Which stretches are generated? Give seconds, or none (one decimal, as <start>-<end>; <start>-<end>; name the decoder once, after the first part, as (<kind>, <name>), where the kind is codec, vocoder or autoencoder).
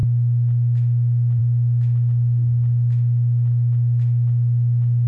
none